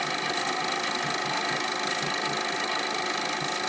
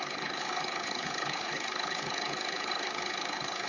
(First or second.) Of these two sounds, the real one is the first